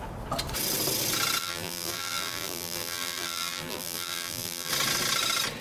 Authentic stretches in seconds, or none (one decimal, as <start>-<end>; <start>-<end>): 0.0-1.4; 4.7-5.6